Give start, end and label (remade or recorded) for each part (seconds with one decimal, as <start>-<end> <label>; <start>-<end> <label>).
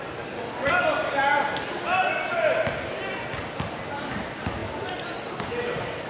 0.0-6.1 recorded